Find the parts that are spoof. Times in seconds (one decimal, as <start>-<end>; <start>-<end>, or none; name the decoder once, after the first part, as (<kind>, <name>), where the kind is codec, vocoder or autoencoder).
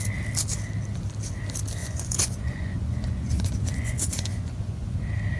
1.8-5.0 (vocoder, Vocos)